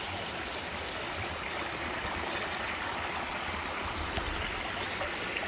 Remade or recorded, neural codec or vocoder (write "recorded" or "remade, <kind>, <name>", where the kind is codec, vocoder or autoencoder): recorded